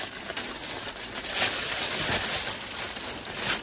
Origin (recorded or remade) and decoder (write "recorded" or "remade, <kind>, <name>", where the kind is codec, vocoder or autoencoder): recorded